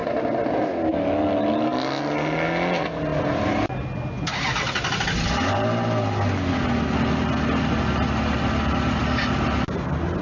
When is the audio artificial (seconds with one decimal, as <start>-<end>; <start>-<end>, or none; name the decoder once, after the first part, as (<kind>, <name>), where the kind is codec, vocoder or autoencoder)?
none